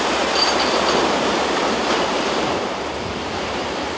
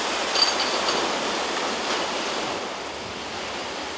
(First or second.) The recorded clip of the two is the second